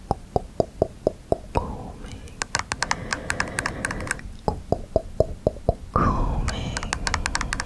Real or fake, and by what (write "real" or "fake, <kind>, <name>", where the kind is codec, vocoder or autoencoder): real